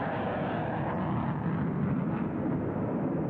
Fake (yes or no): no